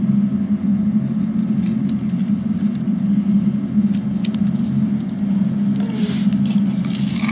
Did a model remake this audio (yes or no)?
no